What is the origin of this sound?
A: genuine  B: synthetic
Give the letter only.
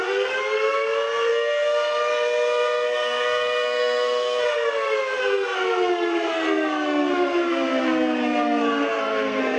B